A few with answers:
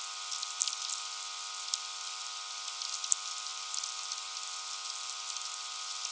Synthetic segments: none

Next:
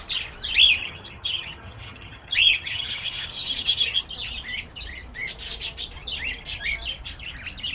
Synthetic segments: 0.8-4.0

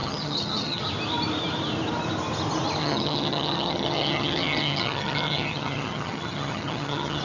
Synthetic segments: 0.0-0.8; 2.8-7.2

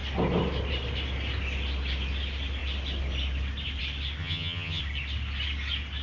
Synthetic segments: 4.2-4.8